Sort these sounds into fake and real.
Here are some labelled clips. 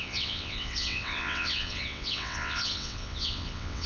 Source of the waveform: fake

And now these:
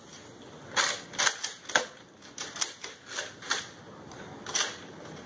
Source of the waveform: real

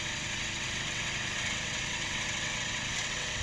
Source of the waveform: fake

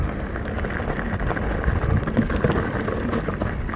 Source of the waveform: real